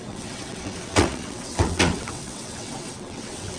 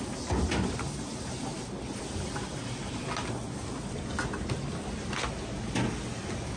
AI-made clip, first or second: first